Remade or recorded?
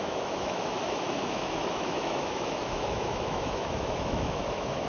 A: remade